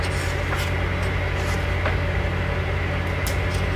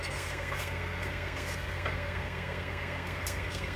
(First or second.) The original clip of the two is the first